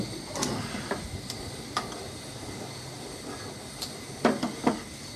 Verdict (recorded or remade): remade